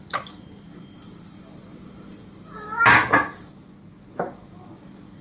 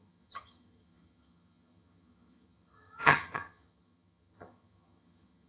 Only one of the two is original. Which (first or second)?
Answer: first